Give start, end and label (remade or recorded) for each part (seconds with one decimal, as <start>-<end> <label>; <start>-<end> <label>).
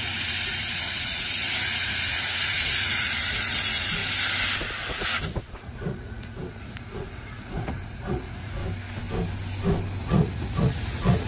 0.0-4.0 remade; 4.0-4.6 recorded; 4.6-8.6 remade; 8.6-10.0 recorded; 10.0-11.3 remade